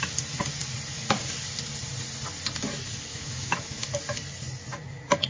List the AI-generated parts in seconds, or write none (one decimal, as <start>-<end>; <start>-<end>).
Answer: 3.1-3.9